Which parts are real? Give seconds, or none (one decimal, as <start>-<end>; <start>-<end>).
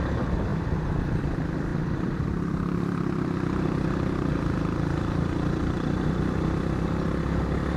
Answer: 0.0-1.7; 6.2-7.8